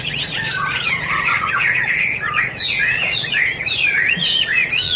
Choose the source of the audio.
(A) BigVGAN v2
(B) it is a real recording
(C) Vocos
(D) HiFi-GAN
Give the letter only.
C